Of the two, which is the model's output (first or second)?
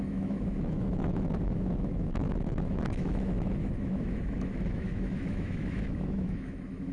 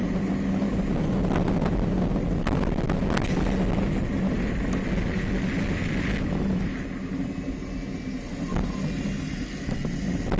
first